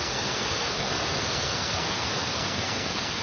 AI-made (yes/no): yes